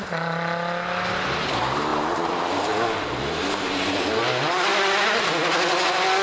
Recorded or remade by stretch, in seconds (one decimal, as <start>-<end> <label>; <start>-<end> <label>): 0.0-6.2 recorded